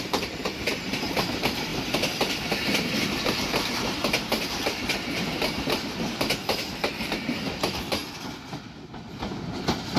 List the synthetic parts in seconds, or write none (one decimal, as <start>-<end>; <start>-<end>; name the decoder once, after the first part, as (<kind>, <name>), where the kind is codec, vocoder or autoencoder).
0.0-4.0 (vocoder, BigVGAN v2); 5.0-8.0